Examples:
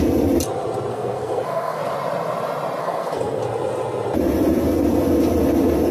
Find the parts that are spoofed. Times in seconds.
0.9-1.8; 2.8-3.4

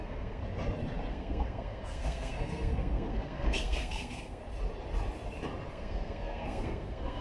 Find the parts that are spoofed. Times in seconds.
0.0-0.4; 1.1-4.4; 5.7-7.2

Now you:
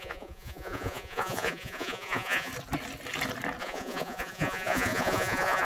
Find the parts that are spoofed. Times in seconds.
0.0-2.5; 3.6-5.6

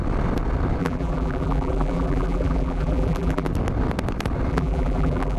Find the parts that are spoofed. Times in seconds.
0.8-3.5; 4.5-5.4

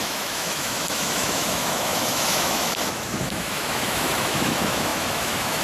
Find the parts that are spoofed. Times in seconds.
0.0-5.6